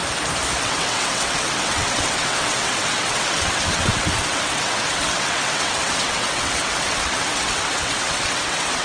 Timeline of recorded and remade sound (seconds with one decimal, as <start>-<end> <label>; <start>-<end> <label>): 0.0-0.6 recorded; 0.6-8.8 remade

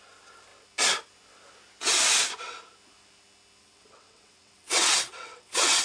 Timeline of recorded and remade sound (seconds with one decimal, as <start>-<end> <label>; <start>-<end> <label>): 0.0-3.6 recorded; 3.6-5.8 remade

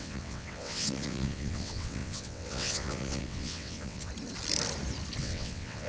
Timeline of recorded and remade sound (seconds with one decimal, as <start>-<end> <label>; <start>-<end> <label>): 0.0-4.1 remade; 4.1-5.2 recorded; 5.2-5.9 remade

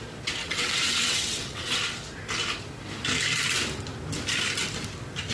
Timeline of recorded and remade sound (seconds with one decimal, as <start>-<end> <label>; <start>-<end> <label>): 0.0-0.4 recorded; 0.4-1.8 remade; 1.8-5.3 recorded

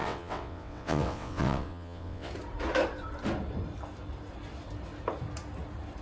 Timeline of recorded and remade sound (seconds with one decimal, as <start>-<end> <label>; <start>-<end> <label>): 0.0-2.3 remade; 2.3-6.0 recorded